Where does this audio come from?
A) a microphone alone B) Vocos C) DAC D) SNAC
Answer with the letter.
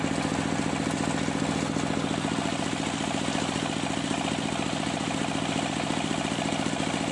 A